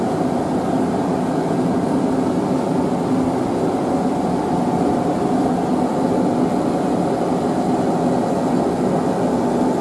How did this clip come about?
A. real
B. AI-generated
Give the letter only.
A